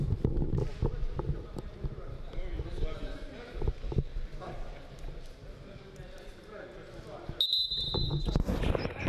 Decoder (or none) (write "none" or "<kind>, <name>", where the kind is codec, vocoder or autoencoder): none